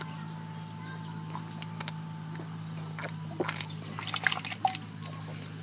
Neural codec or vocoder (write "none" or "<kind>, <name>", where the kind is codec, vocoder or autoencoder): none